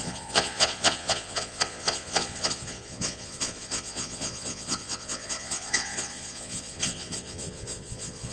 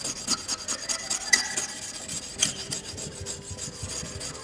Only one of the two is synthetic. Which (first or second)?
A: first